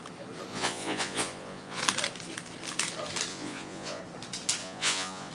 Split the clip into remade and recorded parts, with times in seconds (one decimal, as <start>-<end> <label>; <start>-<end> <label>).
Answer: 0.0-0.5 recorded; 0.5-1.8 remade; 1.8-3.3 recorded; 3.3-4.0 remade; 4.0-4.6 recorded; 4.6-5.3 remade